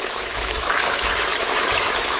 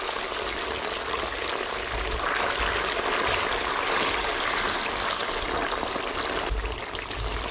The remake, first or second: first